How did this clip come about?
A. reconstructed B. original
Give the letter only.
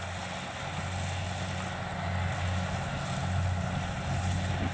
B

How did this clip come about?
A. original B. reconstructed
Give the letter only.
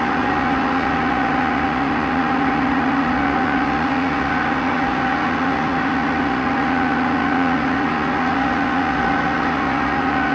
B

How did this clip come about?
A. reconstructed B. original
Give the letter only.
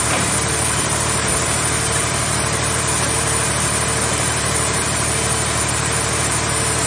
A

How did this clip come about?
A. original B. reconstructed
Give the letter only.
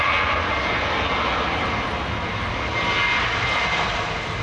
A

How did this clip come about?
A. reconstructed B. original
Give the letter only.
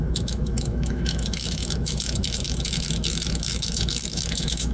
A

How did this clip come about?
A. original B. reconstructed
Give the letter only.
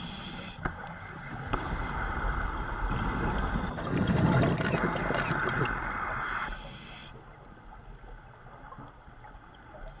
A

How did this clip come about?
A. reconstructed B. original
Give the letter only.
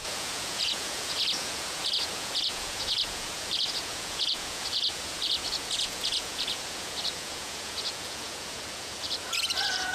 A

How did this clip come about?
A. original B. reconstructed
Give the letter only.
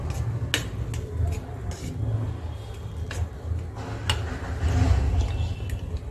A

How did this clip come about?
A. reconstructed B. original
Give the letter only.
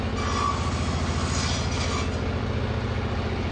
B